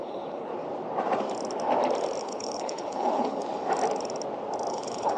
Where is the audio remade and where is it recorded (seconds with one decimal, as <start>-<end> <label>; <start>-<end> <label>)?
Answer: 0.0-0.5 remade; 0.5-2.2 recorded; 2.2-3.4 remade; 3.4-4.7 recorded; 4.7-5.2 remade